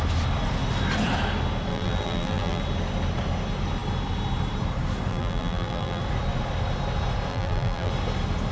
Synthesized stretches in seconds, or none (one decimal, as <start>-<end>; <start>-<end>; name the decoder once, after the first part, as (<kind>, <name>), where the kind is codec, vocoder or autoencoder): 1.7-2.6 (vocoder, BigVGAN v2); 5.1-6.0; 7.3-7.9